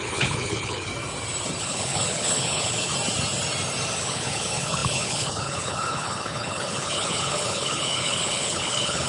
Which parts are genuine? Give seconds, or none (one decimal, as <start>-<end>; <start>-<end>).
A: 0.9-1.6; 2.9-4.0